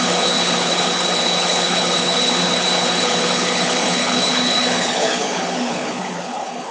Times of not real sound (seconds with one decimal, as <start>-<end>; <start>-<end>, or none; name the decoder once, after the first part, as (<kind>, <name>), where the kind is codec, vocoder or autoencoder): 0.0-6.7 (codec, HILCodec)